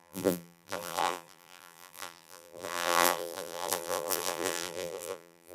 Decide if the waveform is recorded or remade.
remade